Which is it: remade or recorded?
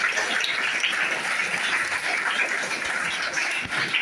recorded